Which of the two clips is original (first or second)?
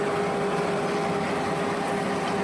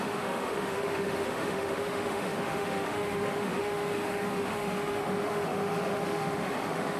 first